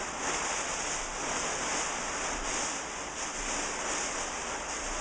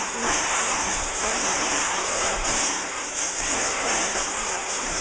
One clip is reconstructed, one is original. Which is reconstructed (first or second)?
second